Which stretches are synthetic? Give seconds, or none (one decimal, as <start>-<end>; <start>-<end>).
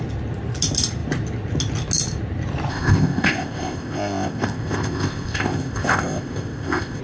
2.7-7.0